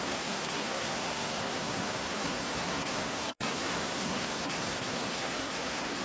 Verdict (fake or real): fake